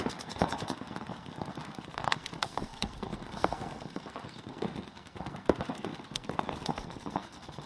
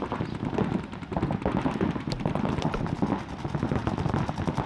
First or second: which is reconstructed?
first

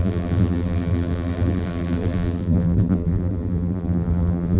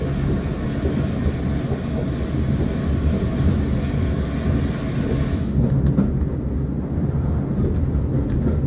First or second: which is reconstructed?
first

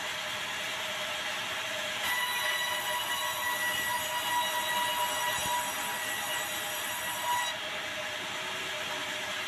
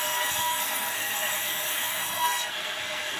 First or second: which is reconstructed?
second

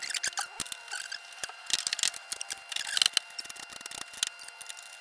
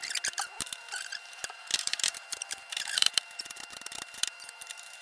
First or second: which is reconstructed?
second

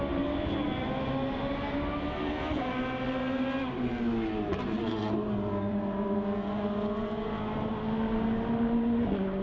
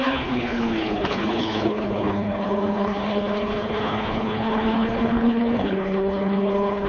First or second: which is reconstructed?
second